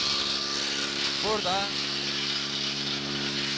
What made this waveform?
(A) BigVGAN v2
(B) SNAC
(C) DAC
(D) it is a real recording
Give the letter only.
D